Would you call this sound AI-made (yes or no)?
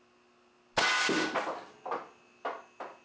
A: no